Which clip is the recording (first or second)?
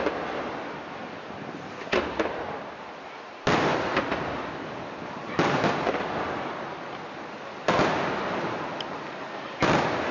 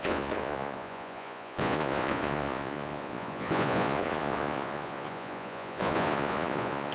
first